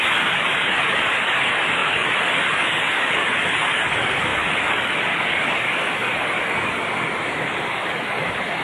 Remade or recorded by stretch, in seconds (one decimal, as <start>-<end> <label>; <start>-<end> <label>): 0.0-8.6 remade